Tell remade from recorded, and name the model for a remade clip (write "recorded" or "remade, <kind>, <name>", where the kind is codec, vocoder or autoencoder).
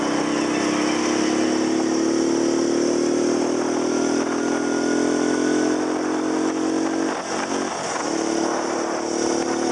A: recorded